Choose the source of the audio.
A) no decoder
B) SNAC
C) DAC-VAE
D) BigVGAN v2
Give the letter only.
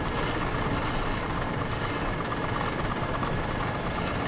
A